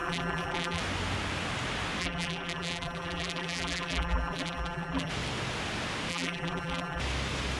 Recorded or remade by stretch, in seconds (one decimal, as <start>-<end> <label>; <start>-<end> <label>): 0.0-0.8 remade; 0.8-2.0 recorded; 2.0-5.1 remade; 5.1-6.1 recorded; 6.1-7.0 remade; 7.0-7.6 recorded